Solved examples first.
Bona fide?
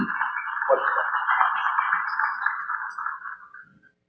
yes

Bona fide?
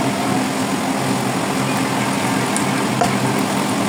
yes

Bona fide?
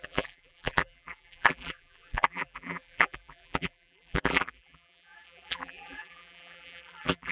no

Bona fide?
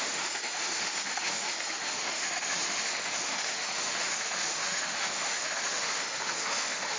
no